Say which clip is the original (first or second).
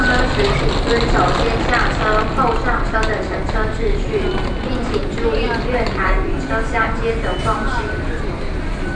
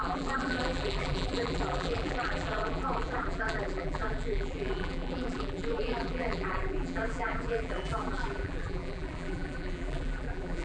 first